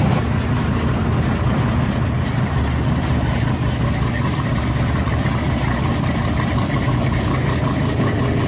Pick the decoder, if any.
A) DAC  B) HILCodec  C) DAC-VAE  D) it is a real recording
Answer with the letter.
D